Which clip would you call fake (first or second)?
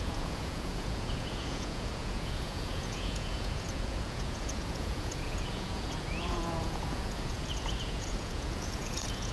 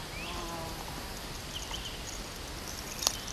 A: first